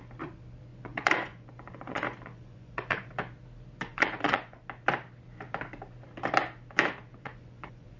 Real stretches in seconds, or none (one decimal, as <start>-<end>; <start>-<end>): 0.0-0.7; 3.1-3.9; 4.6-7.1